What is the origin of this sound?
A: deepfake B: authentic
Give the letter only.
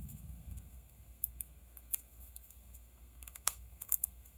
A